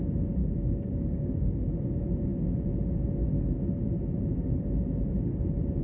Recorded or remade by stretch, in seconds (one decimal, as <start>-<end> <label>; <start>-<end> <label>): 0.0-0.4 recorded; 0.4-1.7 remade; 1.7-5.8 recorded